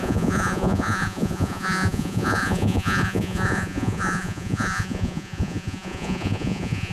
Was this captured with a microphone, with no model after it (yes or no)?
no